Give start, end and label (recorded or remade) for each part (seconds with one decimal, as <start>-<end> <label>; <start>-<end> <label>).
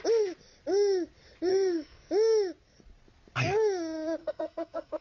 0.0-1.5 recorded; 1.5-2.1 remade; 2.1-4.2 recorded; 4.2-5.0 remade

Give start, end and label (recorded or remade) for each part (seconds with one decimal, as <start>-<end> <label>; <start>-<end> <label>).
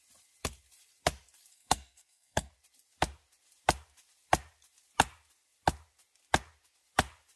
0.0-1.5 recorded; 1.5-2.5 remade; 2.5-7.4 recorded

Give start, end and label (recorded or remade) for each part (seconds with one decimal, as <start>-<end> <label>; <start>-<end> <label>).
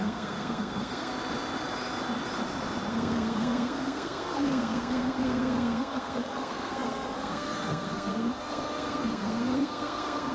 0.0-1.1 remade; 1.1-2.9 recorded; 2.9-10.3 remade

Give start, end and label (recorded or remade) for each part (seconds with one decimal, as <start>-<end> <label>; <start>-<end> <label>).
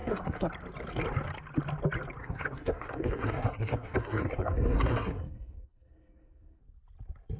0.0-0.5 remade; 0.5-2.2 recorded; 2.2-6.6 remade; 6.6-7.4 recorded